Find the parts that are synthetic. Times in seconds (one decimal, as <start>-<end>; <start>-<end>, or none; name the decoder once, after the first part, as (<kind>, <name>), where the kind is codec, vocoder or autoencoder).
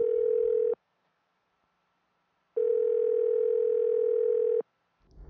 0.0-1.5 (codec, DAC)